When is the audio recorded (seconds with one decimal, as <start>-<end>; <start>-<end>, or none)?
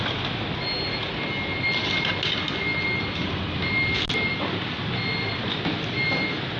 0.0-6.6